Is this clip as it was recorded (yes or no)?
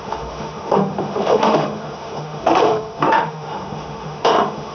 no